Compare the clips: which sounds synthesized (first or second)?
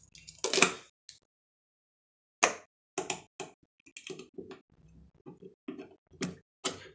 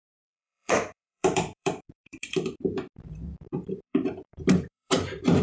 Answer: second